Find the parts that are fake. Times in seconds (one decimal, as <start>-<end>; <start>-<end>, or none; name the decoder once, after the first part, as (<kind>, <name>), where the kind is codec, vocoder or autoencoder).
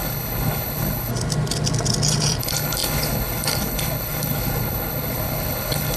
0.0-1.1 (codec, HILCodec); 2.4-6.0